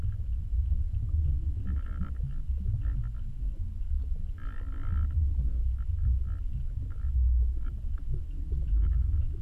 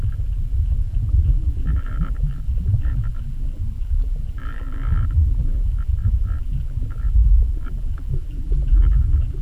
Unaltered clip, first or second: first